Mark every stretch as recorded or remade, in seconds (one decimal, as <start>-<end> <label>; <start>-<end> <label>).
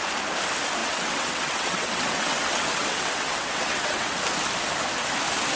0.0-0.8 recorded; 0.8-4.2 remade; 4.2-5.6 recorded